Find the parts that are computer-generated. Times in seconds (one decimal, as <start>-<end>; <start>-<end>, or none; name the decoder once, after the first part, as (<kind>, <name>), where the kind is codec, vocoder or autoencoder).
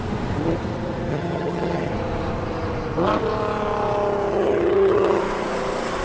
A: 1.1-1.9 (vocoder, HiFi-GAN); 4.3-5.2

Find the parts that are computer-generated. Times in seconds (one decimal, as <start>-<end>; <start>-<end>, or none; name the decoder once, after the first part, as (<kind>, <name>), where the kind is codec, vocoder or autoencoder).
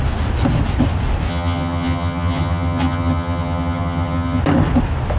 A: 1.3-4.4 (vocoder, HiFi-GAN)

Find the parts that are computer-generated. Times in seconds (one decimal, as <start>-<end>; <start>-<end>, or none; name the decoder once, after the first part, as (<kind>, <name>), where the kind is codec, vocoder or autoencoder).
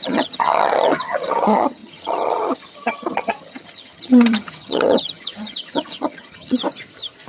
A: 0.0-6.6 (vocoder, HiFi-GAN)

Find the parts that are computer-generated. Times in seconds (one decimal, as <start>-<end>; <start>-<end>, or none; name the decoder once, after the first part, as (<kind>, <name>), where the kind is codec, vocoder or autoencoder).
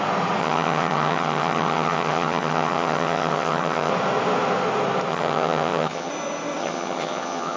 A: 0.4-3.9 (vocoder, HiFi-GAN); 5.1-6.1; 6.6-7.6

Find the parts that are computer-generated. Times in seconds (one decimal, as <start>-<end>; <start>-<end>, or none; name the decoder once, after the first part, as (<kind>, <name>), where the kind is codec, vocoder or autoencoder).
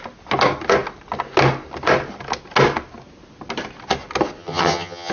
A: 4.4-5.1 (vocoder, HiFi-GAN)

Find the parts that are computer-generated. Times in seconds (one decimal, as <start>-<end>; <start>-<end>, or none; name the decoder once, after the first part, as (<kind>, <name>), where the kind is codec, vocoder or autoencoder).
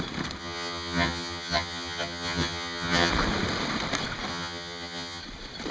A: 0.4-3.1 (vocoder, HiFi-GAN); 4.3-5.2